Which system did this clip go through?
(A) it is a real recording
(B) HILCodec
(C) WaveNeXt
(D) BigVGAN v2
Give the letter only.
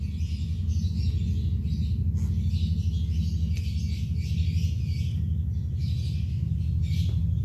A